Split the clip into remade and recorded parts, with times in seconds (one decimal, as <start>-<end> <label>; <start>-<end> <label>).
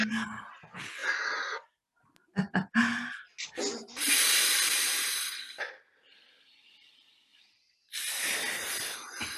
0.0-7.3 recorded; 7.3-8.1 remade; 8.1-9.4 recorded